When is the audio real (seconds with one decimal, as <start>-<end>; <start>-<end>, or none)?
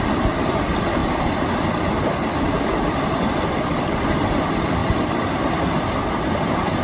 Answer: 0.0-4.8; 5.6-6.8